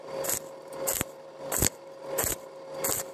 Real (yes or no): yes